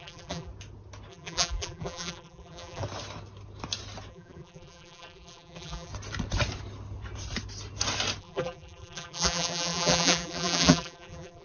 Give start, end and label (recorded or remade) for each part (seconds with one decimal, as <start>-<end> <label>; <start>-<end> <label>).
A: 0.0-0.5 remade; 0.5-1.1 recorded; 1.1-2.8 remade; 2.8-4.1 recorded; 4.1-5.9 remade; 5.9-8.2 recorded; 8.2-11.4 remade